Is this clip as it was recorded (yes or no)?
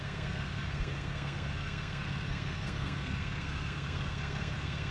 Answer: no